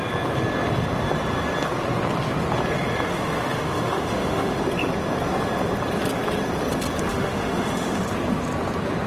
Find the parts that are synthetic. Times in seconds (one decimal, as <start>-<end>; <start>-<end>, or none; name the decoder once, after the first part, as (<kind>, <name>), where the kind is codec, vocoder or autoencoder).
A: 3.1-4.6 (autoencoder, DAC-VAE); 7.1-8.0